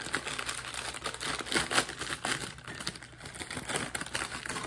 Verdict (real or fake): real